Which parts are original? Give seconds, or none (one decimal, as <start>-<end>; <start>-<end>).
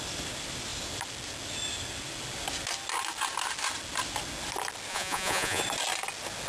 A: 0.0-4.9; 5.6-6.5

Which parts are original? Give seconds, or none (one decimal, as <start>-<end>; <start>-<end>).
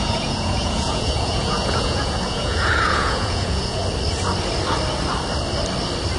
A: 3.8-6.2